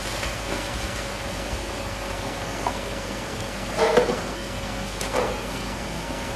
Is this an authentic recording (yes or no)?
no